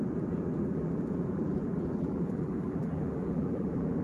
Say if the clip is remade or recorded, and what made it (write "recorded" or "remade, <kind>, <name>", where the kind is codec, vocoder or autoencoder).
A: remade, vocoder, BigVGAN v2